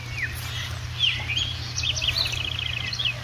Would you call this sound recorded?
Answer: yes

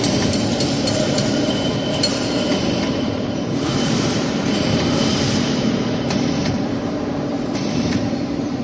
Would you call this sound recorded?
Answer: no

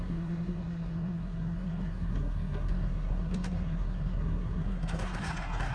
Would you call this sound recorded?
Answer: no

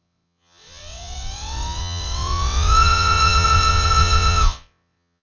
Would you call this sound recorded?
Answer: no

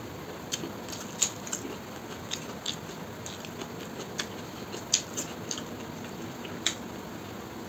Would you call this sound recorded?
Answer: yes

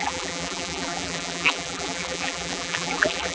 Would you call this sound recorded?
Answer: no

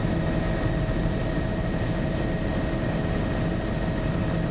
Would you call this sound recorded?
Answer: yes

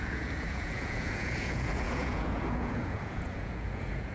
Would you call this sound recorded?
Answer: no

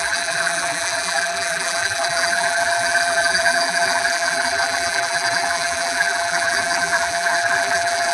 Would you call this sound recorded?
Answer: no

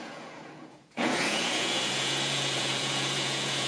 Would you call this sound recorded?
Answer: no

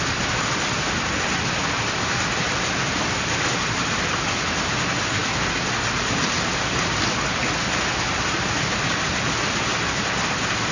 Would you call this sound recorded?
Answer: yes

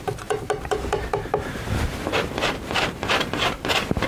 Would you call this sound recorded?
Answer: no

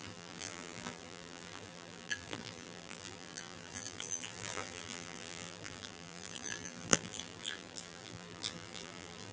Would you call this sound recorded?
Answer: no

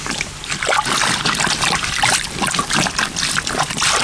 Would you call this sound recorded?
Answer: yes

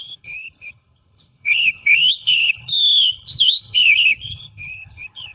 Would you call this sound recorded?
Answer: no